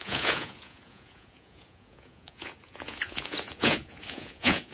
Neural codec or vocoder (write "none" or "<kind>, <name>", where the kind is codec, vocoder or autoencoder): vocoder, Vocos